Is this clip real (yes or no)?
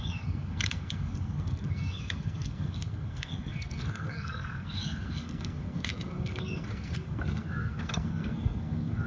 no